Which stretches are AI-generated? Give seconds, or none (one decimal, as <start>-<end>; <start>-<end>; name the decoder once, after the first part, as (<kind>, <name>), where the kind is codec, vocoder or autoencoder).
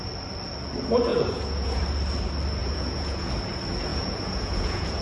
1.1-1.8 (vocoder, Vocos); 2.6-3.3; 3.9-5.0